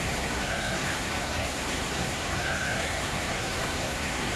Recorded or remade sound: remade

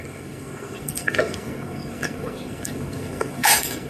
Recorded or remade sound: remade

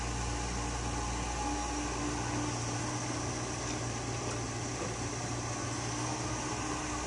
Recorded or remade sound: recorded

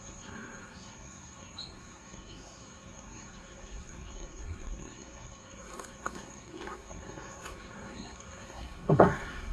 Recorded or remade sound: remade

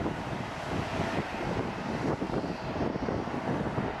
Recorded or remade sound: recorded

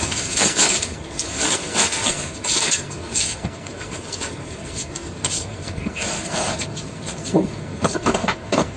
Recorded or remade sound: remade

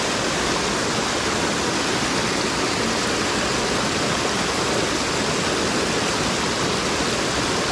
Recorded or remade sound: recorded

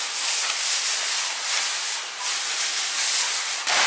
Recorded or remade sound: recorded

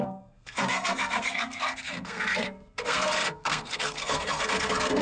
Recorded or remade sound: remade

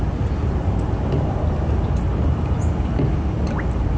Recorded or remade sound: recorded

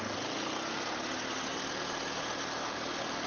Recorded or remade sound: recorded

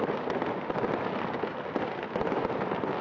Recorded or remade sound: recorded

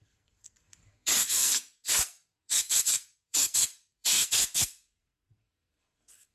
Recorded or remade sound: remade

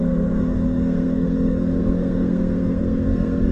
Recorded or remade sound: remade